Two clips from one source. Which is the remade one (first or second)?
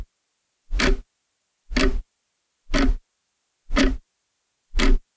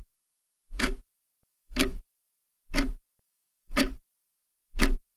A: second